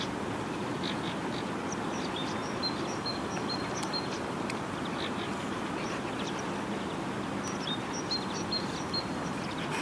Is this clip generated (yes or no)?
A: no